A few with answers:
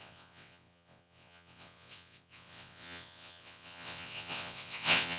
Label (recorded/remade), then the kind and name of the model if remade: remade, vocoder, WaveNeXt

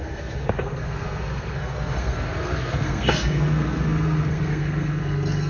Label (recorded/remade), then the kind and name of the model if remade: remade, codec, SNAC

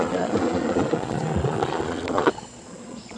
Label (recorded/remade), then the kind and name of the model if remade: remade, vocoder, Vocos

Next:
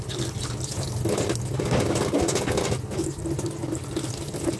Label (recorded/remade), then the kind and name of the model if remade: recorded